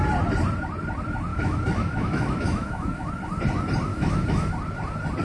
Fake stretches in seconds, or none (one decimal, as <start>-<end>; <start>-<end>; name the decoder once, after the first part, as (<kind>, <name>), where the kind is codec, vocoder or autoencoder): 1.3-3.1 (autoencoder, DAC-VAE); 3.9-4.5